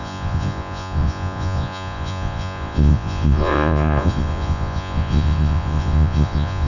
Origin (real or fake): fake